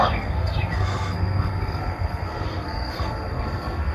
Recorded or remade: remade